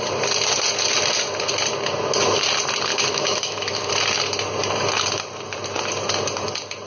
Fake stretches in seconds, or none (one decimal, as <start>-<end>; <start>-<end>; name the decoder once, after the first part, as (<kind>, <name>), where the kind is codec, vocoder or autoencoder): 2.9-3.9 (autoencoder, DAC-VAE)